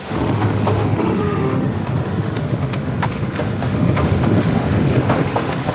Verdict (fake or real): fake